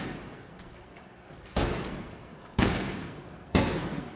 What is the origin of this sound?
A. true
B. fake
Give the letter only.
B